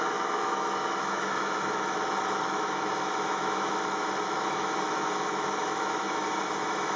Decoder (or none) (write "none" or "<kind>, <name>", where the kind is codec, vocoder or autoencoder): autoencoder, DAC-VAE